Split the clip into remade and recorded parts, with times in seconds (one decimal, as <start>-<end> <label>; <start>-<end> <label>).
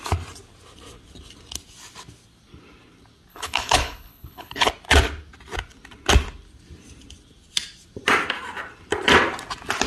0.0-3.3 recorded; 3.3-4.7 remade; 4.7-9.9 recorded